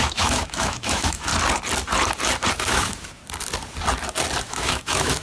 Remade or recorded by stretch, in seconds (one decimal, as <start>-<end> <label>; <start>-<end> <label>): 0.0-1.3 remade; 1.3-2.5 recorded; 2.5-3.2 remade; 3.2-4.4 recorded; 4.4-5.2 remade